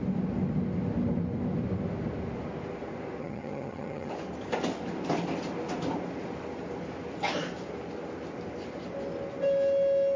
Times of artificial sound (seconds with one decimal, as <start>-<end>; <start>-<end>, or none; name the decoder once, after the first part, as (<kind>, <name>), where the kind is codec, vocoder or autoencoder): 3.2-4.1 (vocoder, HiFi-GAN)

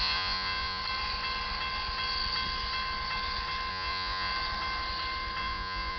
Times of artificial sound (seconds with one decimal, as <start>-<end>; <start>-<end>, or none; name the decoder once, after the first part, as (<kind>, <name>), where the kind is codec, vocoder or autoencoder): 0.0-0.8 (vocoder, Vocos); 3.7-4.3; 5.4-6.0

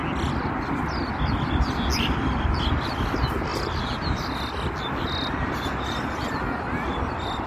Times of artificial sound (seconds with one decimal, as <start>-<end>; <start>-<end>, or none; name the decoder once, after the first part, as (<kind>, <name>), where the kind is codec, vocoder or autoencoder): none

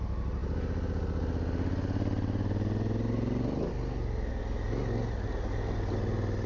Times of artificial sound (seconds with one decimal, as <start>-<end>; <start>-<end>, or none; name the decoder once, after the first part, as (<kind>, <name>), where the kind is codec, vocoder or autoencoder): none

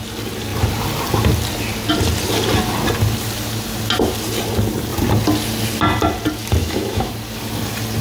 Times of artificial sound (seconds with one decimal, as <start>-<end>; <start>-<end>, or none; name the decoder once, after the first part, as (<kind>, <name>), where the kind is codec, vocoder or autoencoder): 6.6-7.1 (autoencoder, DAC-VAE)